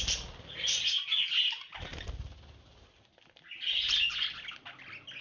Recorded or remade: recorded